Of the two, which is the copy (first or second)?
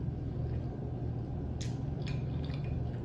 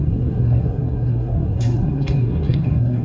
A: second